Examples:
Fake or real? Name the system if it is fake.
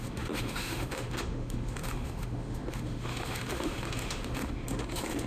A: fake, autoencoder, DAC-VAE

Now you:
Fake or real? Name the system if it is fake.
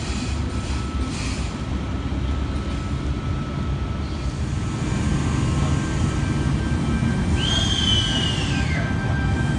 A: real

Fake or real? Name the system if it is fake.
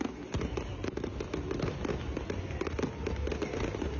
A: real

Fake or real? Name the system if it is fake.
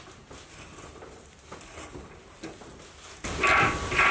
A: real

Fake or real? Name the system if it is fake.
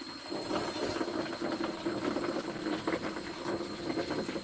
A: real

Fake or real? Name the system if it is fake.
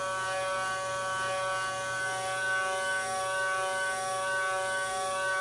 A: real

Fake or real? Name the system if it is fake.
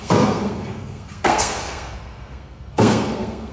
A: fake, codec, SNAC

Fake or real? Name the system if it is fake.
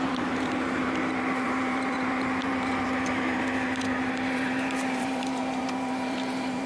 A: fake, vocoder, BigVGAN v2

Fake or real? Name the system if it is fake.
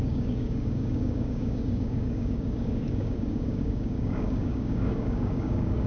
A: fake, codec, DAC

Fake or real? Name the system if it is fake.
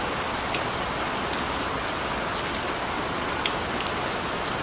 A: real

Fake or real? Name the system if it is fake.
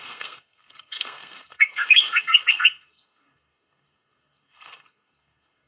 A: fake, codec, SNAC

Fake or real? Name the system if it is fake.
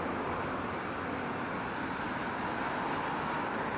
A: real